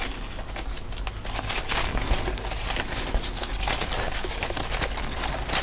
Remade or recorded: recorded